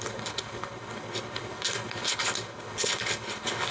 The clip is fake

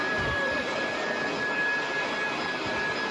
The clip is real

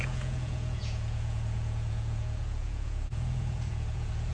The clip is fake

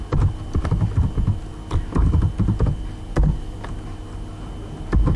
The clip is real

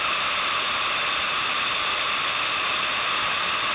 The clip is real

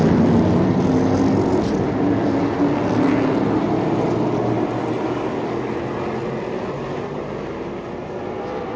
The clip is real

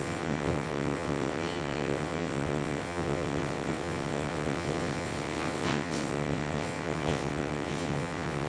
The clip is fake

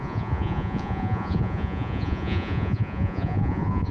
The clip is fake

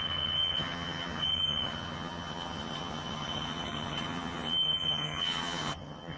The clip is fake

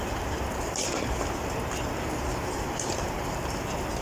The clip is real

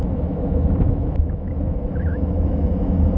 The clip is fake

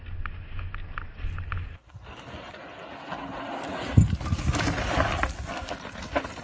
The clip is real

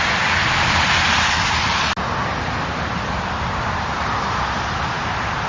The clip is real